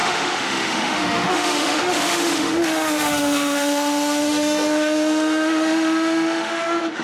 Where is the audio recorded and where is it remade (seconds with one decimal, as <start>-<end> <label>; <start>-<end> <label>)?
0.0-7.0 remade